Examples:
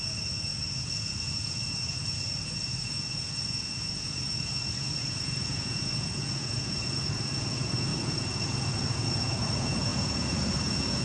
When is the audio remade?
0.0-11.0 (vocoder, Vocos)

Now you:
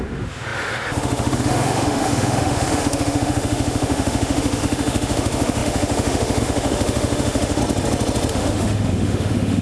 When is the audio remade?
0.0-7.6 (autoencoder, DAC-VAE); 8.3-9.6

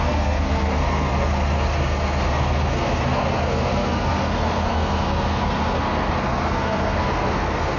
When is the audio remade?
0.0-7.8 (codec, SNAC)